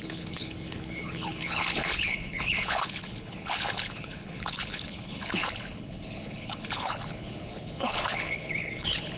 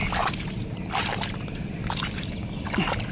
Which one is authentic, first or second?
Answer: second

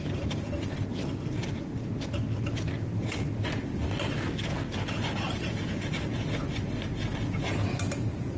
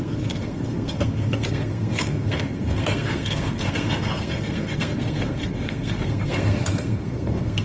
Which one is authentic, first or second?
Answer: first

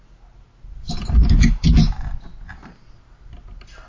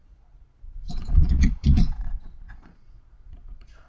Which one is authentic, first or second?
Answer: first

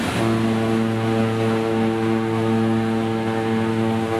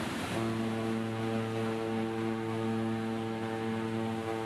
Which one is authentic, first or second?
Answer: first